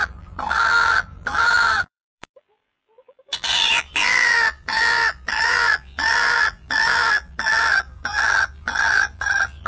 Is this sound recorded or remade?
remade